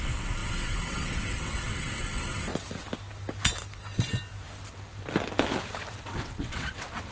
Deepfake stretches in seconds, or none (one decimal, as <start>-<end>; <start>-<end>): 0.0-2.5; 5.9-7.1